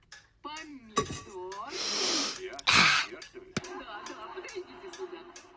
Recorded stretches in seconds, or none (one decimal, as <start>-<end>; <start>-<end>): 0.0-5.6